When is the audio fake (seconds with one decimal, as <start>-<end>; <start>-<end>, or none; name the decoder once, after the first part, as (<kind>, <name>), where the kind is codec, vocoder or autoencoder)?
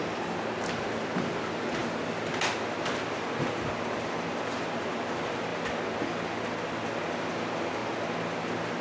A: none